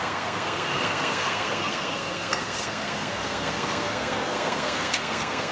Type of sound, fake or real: fake